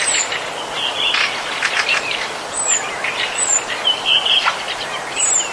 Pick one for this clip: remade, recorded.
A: recorded